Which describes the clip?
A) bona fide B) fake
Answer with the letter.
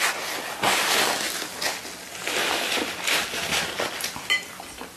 A